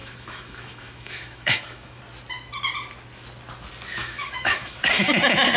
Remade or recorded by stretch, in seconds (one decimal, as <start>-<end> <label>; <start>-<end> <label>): 0.0-2.0 remade; 2.0-4.0 recorded; 4.0-4.8 remade; 4.8-5.6 recorded